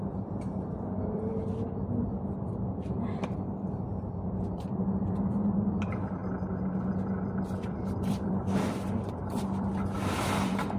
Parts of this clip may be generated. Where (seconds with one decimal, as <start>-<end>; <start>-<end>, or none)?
0.0-6.2; 6.9-10.8